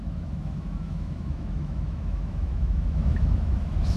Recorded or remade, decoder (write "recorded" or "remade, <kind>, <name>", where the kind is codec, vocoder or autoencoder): remade, autoencoder, DAC-VAE